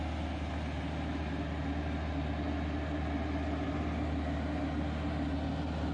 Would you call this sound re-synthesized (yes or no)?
no